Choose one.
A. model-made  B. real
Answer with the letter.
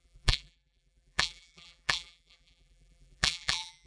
A